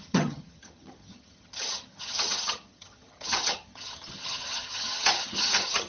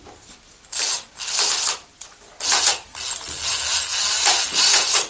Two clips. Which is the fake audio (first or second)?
first